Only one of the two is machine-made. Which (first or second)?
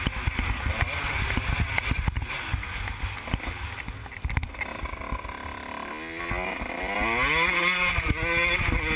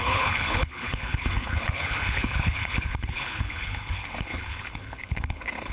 second